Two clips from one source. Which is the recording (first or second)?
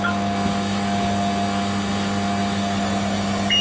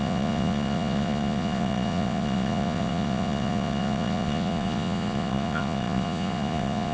first